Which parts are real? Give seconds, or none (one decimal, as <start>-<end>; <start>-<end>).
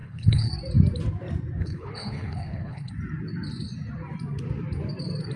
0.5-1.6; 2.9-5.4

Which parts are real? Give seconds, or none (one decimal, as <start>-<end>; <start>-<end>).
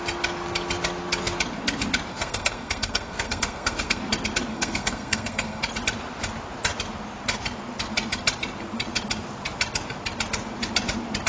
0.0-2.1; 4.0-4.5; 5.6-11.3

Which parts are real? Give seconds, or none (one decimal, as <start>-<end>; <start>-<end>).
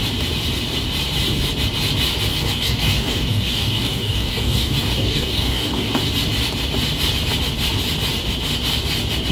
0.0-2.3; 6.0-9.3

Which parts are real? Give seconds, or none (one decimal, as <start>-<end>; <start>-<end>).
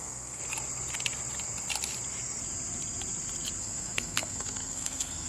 0.4-3.6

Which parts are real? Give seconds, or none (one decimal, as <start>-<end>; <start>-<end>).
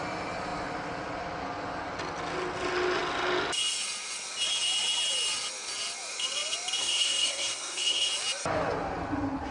0.0-6.8; 8.1-9.5